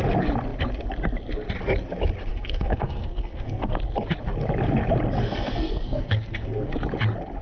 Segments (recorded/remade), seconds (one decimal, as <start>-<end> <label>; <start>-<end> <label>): 0.0-2.3 recorded; 2.3-3.7 remade; 3.7-5.2 recorded; 5.2-6.7 remade; 6.7-7.4 recorded